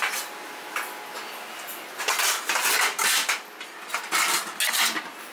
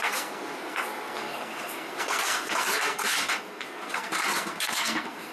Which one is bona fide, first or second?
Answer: first